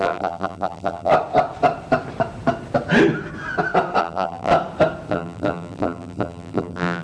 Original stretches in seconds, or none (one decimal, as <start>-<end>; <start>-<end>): 1.1-4.0; 4.5-5.1